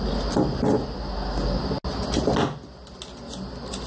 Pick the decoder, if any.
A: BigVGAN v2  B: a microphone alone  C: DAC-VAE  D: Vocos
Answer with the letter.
B